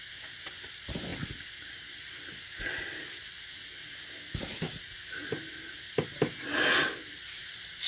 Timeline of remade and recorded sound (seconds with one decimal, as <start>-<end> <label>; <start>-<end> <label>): 0.0-7.9 recorded